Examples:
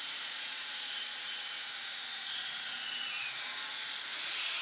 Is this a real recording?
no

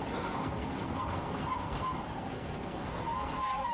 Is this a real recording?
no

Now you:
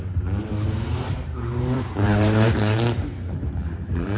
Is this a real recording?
no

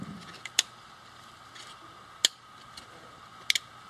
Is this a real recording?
yes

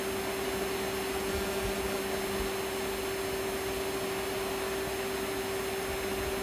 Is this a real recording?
yes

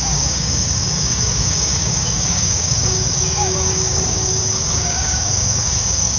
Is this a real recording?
no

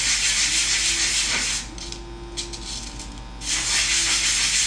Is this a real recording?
yes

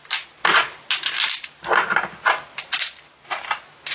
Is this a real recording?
yes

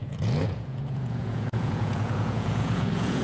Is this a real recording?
no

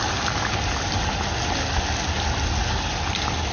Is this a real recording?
yes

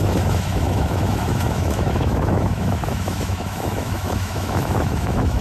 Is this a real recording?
no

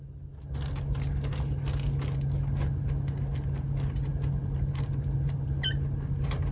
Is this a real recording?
yes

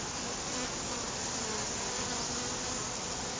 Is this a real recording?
yes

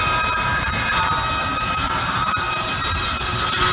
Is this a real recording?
no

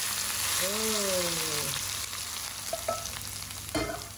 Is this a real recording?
yes